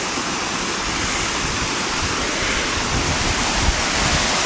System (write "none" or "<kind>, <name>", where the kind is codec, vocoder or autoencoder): none